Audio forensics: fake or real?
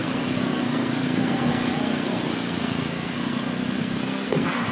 fake